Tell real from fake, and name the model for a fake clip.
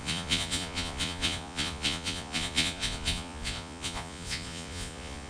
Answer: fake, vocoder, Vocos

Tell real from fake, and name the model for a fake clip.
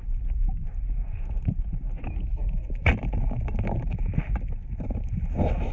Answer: real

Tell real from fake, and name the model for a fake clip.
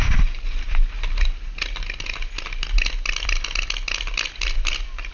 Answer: real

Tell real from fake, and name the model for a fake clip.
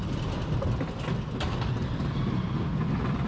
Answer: real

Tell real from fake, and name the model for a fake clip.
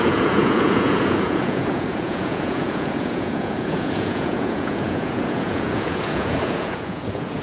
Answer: fake, vocoder, Vocos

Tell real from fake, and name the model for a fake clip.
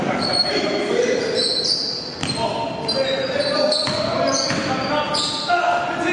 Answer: real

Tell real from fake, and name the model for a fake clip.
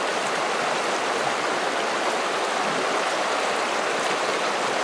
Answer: real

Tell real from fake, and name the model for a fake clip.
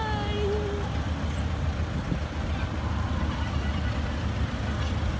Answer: real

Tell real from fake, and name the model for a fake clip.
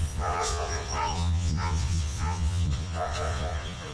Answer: fake, vocoder, Vocos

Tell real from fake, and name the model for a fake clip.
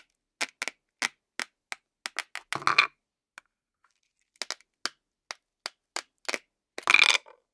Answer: real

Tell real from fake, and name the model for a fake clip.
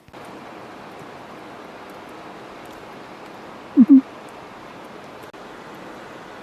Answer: real